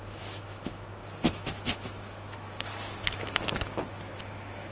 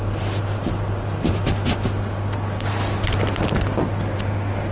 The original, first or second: second